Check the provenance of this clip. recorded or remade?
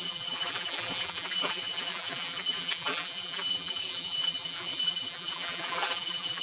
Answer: remade